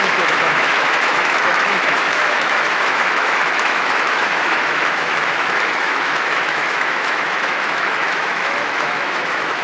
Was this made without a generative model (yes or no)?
no